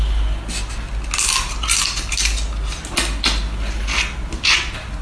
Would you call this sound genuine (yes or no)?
yes